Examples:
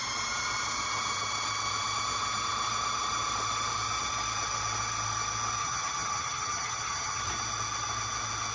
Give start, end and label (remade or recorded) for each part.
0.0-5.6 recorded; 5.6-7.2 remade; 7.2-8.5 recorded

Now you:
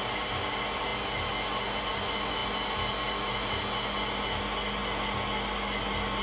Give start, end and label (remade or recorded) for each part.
0.0-6.2 recorded

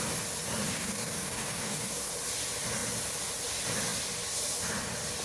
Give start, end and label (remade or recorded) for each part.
0.0-0.7 recorded; 0.7-2.1 remade; 2.1-5.2 recorded

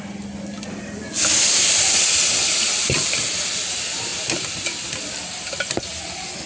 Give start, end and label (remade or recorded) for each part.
0.0-6.5 recorded

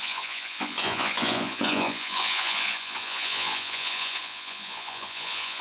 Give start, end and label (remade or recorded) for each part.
0.0-5.6 remade

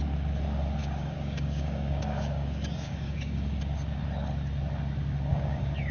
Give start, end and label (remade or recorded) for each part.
0.0-0.8 recorded; 0.8-3.6 remade; 3.6-5.3 recorded; 5.3-5.9 remade

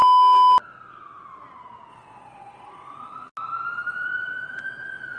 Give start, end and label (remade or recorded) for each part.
0.0-1.9 recorded; 1.9-3.3 remade; 3.3-3.9 recorded; 3.9-5.2 remade

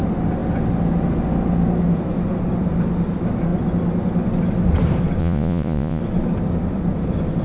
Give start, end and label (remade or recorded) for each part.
0.0-5.2 recorded; 5.2-6.0 remade; 6.0-7.4 recorded